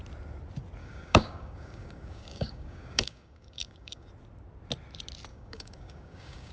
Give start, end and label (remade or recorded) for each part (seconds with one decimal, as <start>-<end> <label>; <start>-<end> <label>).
0.0-0.8 recorded; 0.8-4.1 remade; 4.1-5.3 recorded; 5.3-6.5 remade